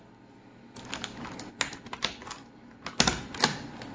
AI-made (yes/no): no